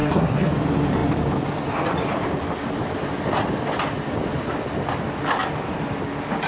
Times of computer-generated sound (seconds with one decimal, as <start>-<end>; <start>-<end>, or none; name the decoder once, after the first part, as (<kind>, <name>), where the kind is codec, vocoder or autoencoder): 0.0-0.5 (codec, SNAC)